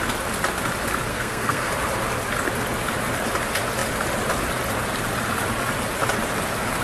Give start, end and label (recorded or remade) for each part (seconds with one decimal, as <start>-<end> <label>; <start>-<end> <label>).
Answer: 0.0-1.1 recorded; 1.1-1.7 remade; 1.7-6.8 recorded

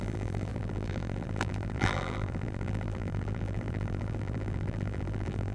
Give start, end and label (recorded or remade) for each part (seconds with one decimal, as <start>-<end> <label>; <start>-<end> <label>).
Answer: 0.0-5.5 remade